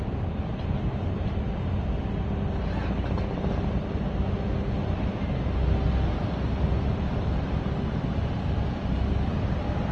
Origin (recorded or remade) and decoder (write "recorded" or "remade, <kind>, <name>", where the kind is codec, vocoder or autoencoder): recorded